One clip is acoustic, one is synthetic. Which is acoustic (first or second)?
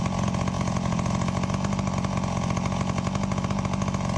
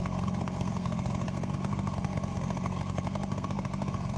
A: first